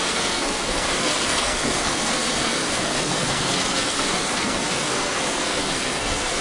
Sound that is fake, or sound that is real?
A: fake